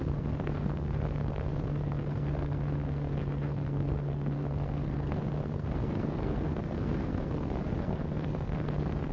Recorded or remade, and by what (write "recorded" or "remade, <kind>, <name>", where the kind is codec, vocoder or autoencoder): remade, codec, SNAC